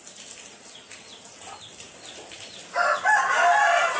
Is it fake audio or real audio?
real